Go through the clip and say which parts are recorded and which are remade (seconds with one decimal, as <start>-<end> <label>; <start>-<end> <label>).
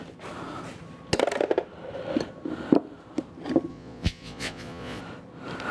0.0-3.7 recorded; 3.7-5.0 remade; 5.0-5.7 recorded